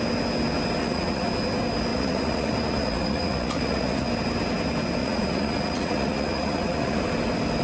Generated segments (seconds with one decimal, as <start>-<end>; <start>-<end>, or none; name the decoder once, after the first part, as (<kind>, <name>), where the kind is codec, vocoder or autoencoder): 0.8-1.3 (vocoder, Vocos); 1.9-4.1; 5.0-7.0